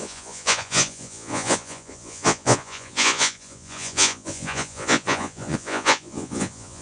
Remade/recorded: remade